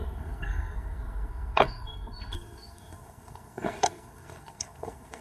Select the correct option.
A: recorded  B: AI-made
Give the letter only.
B